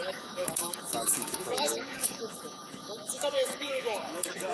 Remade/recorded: remade